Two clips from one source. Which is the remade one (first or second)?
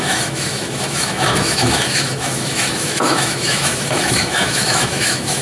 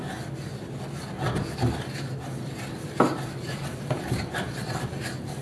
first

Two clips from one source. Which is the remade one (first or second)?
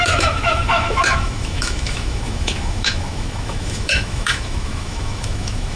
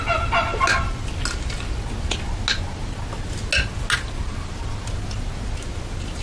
first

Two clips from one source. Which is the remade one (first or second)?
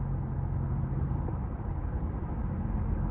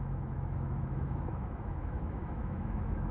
second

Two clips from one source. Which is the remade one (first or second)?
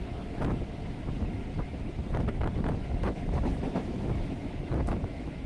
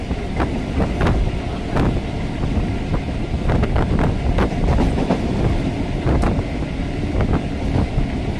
first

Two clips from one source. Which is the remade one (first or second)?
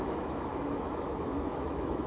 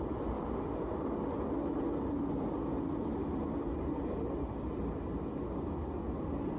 first